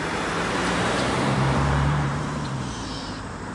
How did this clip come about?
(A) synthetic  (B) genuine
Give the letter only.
A